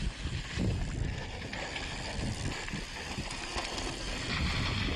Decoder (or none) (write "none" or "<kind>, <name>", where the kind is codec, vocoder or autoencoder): none